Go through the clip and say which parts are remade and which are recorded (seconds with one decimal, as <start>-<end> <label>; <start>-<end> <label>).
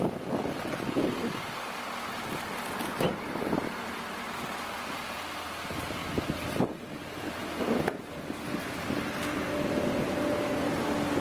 0.0-11.2 recorded